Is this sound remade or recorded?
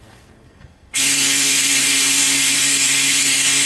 remade